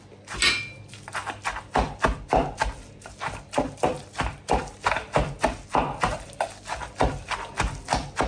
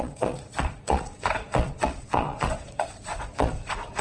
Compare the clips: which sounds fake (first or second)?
second